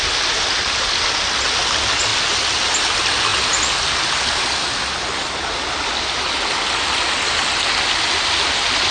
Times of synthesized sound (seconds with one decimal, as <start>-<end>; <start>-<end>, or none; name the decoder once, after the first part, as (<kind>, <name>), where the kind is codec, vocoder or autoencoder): none